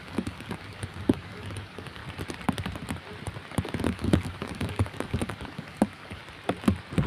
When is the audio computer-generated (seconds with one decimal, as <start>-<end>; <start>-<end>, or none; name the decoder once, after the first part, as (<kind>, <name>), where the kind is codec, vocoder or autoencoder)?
0.0-2.0 (codec, DAC); 3.8-6.2